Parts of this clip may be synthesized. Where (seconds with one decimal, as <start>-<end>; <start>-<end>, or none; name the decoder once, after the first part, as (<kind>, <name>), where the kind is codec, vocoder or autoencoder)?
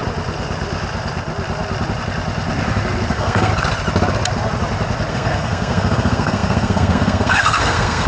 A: 3.1-3.5 (codec, SNAC); 5.1-8.1